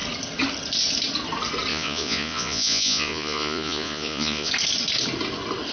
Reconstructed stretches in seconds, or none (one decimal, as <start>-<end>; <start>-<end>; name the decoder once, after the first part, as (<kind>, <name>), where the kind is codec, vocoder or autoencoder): 1.7-4.5 (vocoder, Vocos)